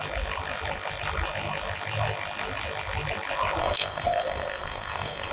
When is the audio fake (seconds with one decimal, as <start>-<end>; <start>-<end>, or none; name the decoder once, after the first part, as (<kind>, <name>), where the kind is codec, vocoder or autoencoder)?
3.6-5.3 (codec, SNAC)